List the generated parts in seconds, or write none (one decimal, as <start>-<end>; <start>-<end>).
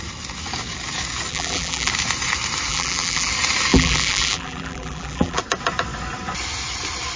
1.3-1.9; 2.7-3.3; 3.7-5.4